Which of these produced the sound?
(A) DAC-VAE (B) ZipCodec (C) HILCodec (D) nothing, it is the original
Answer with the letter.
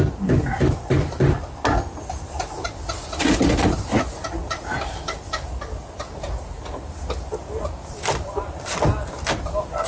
D